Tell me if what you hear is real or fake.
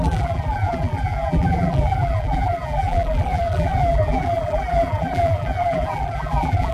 fake